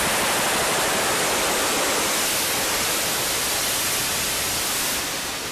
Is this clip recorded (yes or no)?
yes